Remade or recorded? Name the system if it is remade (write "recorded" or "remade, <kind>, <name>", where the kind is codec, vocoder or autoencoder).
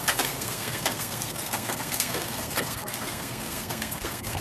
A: remade, codec, SNAC